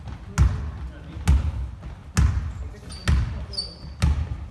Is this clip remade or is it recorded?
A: recorded